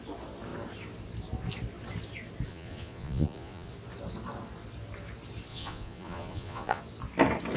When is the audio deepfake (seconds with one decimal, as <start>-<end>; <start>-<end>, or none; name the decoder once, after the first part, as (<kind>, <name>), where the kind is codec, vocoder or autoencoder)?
2.5-3.7 (vocoder, Vocos); 5.5-6.8